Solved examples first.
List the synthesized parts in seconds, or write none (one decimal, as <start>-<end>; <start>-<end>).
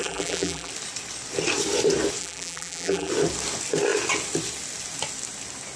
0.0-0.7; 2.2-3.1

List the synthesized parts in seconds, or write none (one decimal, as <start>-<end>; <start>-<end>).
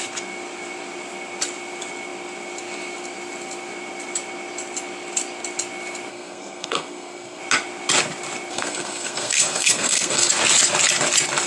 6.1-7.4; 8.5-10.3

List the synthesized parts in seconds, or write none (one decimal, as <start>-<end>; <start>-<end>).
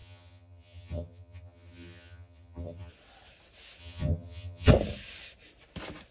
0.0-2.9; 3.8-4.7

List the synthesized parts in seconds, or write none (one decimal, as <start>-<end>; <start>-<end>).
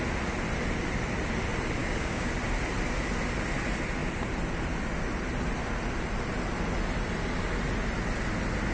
1.8-2.3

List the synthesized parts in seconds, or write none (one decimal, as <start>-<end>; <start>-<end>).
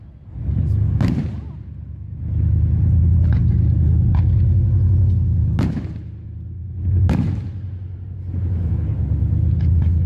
none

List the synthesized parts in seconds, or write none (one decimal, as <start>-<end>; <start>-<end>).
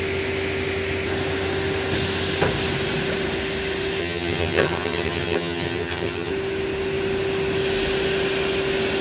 4.0-6.3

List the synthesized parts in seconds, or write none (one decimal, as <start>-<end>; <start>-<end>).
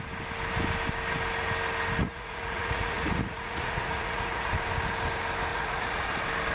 2.0-4.5; 5.5-6.1